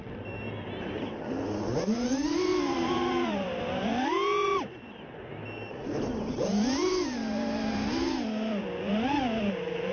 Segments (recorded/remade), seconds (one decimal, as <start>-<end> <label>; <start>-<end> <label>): 0.0-2.5 recorded; 2.5-3.6 remade; 3.6-9.9 recorded